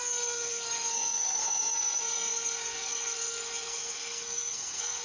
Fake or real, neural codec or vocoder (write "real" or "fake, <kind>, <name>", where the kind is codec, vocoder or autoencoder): fake, codec, SNAC